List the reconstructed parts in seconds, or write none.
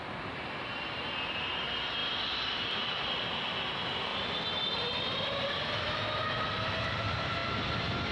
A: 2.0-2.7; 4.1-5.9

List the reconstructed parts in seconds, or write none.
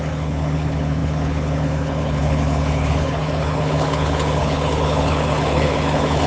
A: 0.0-6.3